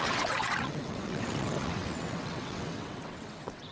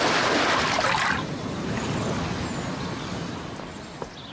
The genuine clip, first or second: second